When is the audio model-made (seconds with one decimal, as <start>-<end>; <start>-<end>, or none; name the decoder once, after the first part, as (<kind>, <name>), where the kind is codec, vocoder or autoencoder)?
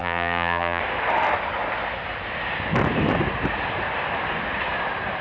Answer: 0.0-0.8 (vocoder, BigVGAN v2)